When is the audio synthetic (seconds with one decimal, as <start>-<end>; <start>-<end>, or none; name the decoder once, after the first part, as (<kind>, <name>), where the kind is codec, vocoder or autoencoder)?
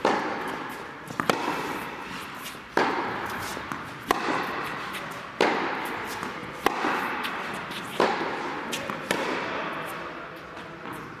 0.0-6.4 (vocoder, BigVGAN v2); 6.9-11.2